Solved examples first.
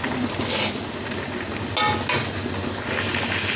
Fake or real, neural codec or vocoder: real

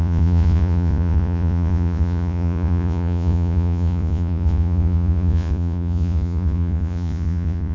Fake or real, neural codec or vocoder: fake, vocoder, Vocos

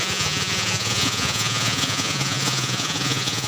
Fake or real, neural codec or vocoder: fake, vocoder, Vocos